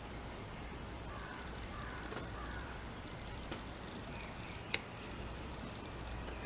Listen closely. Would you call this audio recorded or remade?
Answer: remade